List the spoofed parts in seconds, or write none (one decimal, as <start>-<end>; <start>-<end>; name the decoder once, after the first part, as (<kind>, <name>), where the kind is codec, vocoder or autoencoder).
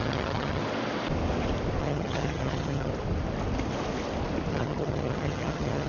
0.0-0.6 (vocoder, HiFi-GAN); 1.8-2.9; 4.5-5.9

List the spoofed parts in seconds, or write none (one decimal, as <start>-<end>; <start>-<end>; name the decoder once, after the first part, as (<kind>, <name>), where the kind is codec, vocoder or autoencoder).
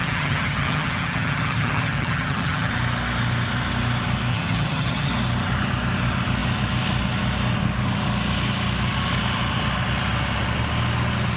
0.0-2.7 (vocoder, HiFi-GAN); 4.3-5.1